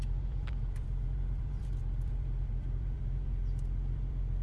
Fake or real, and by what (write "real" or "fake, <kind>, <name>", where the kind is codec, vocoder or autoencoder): fake, vocoder, BigVGAN v2